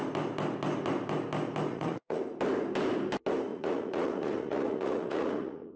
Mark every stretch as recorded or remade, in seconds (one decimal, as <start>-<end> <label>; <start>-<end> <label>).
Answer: 0.0-1.7 recorded; 1.7-2.2 remade; 2.2-3.5 recorded; 3.5-5.8 remade